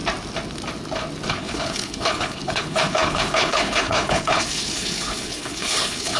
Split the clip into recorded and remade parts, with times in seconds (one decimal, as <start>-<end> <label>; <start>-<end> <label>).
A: 0.0-1.3 recorded; 1.3-6.2 remade